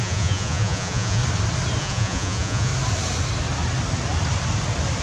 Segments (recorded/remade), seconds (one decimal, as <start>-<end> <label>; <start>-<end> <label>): 0.0-1.2 remade; 1.2-1.8 recorded; 1.8-2.7 remade; 2.7-5.0 recorded